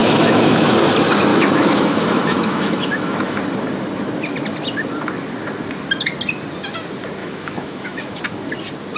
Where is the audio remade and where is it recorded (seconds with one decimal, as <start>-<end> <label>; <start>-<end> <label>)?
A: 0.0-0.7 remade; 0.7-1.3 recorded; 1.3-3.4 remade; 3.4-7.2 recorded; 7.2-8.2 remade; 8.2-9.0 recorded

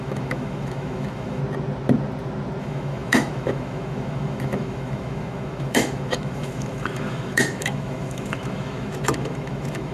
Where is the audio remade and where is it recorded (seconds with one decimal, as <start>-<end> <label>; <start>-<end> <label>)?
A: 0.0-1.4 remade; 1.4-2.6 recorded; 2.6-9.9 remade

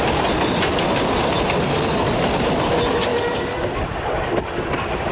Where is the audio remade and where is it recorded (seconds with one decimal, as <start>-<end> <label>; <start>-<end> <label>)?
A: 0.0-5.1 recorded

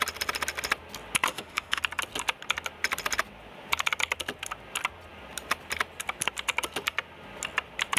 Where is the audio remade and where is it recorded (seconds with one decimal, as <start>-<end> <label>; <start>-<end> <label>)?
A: 0.0-1.3 recorded; 1.3-1.8 remade; 1.8-8.0 recorded